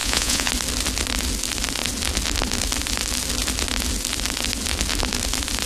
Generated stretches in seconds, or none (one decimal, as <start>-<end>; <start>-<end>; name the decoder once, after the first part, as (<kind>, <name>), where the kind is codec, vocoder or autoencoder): 0.0-0.5 (vocoder, Vocos)